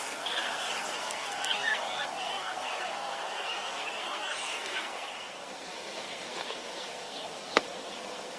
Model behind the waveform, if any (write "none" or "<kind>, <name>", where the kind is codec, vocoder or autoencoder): codec, SNAC